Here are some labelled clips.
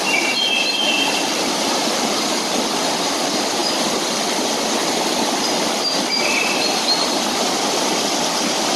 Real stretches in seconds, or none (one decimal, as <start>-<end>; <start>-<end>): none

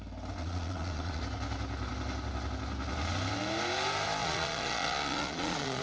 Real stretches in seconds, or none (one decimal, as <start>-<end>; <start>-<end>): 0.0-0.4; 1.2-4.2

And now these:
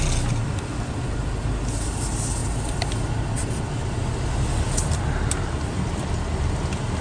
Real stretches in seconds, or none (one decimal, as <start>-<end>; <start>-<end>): 0.0-7.0

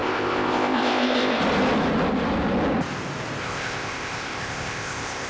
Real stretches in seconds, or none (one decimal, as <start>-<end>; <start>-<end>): 1.4-3.4